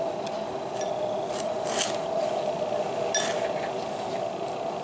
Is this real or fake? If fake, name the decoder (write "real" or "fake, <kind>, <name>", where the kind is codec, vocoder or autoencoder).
real